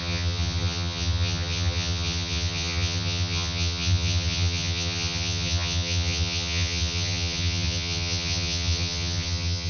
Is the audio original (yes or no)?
no